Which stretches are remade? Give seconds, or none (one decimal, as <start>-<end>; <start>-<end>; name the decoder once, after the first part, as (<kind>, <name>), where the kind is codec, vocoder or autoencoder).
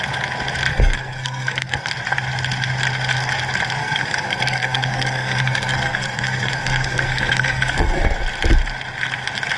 0.7-1.9 (codec, SNAC); 3.8-8.2